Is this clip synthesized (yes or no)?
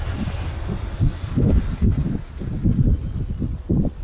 no